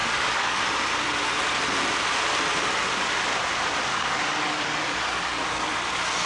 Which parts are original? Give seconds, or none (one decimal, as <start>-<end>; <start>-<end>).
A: 0.6-3.9; 5.7-6.3